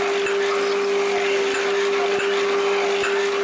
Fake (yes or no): no